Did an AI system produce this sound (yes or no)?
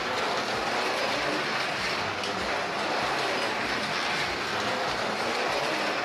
no